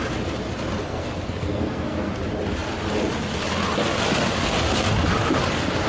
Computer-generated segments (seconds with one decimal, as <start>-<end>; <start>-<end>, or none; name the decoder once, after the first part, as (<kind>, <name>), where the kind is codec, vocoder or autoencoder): 0.9-2.1 (codec, SNAC)